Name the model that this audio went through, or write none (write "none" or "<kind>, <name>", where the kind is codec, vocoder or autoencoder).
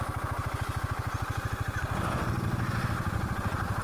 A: none